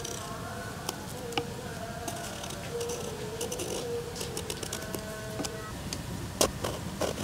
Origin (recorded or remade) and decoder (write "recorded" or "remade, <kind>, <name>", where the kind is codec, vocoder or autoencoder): recorded